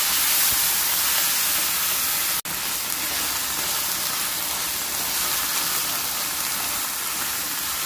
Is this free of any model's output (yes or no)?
yes